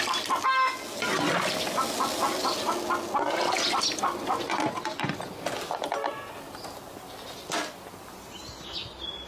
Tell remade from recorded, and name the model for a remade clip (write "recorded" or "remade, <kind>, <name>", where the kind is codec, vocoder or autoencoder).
recorded